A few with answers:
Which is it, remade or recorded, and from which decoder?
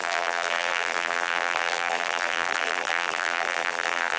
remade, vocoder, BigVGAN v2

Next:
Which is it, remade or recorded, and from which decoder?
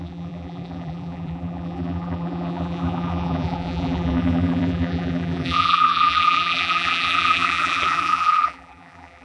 remade, vocoder, BigVGAN v2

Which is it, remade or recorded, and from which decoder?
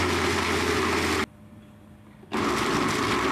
recorded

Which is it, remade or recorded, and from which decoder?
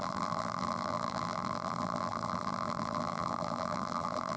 remade, vocoder, BigVGAN v2